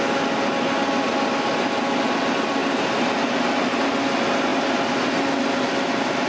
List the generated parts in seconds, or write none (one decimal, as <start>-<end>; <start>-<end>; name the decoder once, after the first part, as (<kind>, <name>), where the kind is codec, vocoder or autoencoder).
none